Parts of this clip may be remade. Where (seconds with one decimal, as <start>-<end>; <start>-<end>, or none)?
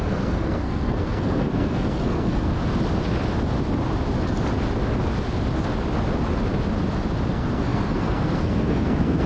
0.0-2.6; 7.3-9.3